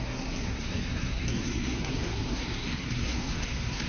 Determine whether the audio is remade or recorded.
remade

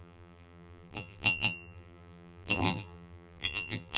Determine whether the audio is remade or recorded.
remade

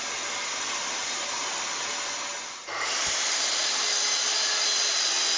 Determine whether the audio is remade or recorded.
recorded